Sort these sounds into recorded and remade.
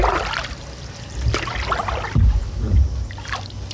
recorded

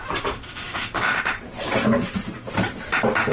remade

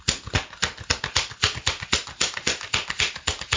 recorded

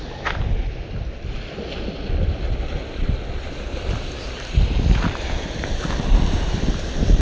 recorded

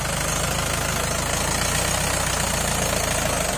recorded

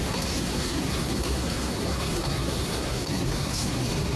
remade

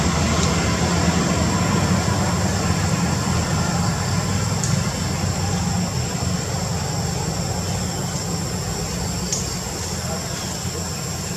recorded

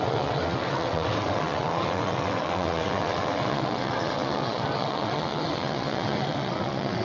remade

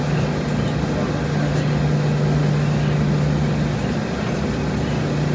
recorded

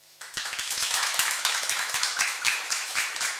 remade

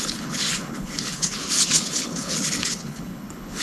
remade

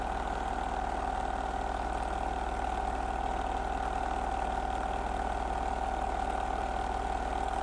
recorded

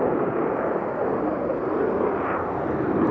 recorded